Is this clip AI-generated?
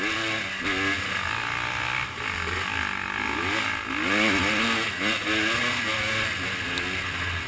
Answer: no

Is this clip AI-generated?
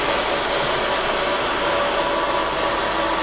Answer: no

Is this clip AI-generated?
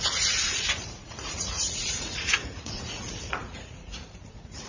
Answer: yes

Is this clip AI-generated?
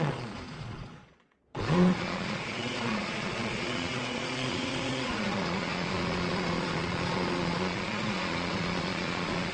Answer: yes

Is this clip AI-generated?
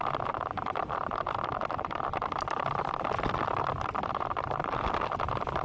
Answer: no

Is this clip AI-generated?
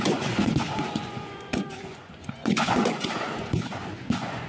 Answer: yes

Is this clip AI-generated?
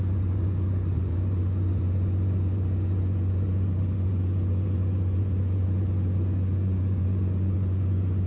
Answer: yes